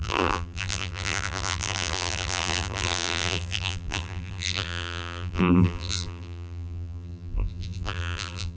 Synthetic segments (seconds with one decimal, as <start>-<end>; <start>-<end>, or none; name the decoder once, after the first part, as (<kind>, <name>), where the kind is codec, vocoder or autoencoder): 0.0-8.6 (vocoder, BigVGAN v2)